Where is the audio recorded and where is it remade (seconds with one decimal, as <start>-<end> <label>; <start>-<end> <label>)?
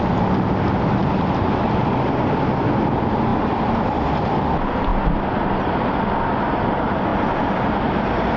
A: 0.0-8.4 recorded